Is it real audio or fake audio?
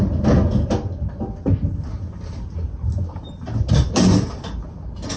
real